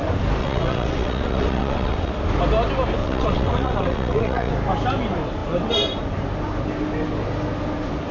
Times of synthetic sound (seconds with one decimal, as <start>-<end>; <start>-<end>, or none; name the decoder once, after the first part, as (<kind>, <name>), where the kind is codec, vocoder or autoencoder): 0.4-2.1 (vocoder, WaveNeXt); 3.0-4.5

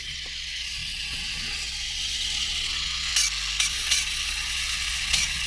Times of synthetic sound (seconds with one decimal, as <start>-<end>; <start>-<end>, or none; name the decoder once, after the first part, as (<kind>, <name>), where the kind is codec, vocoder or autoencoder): 0.0-3.1 (vocoder, WaveNeXt); 3.7-5.5

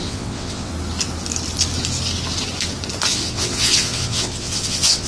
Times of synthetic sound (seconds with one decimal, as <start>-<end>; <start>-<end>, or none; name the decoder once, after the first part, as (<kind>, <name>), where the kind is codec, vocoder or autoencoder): 0.0-0.7 (vocoder, WaveNeXt); 3.1-5.1

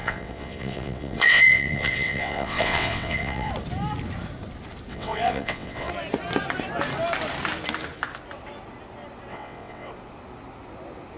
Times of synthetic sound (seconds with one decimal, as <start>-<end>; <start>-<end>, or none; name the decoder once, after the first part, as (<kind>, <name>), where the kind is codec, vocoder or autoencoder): 0.0-3.5 (vocoder, WaveNeXt); 4.9-5.9; 9.3-9.9

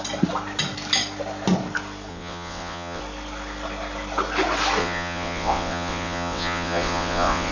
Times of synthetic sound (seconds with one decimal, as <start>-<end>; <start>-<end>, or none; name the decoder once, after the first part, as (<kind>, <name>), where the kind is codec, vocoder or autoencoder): 2.1-3.0 (vocoder, WaveNeXt); 4.8-7.5

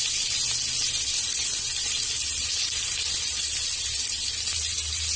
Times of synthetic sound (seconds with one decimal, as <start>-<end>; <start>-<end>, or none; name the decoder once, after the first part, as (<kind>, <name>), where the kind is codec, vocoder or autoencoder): none

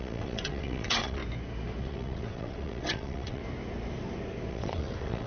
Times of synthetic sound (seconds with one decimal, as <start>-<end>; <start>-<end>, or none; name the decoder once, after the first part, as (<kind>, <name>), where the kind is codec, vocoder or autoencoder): 0.0-1.2 (vocoder, WaveNeXt); 1.8-3.4; 4.5-5.3